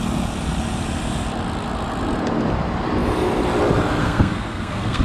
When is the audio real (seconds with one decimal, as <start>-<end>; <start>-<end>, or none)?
0.0-4.0

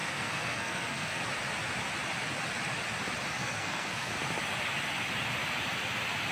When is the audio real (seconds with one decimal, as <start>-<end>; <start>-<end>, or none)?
1.2-3.4; 4.1-6.3